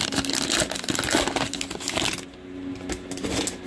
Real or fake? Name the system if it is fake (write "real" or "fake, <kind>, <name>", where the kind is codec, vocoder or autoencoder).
real